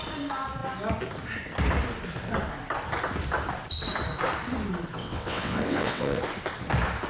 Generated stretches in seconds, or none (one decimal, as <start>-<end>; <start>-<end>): 5.0-6.2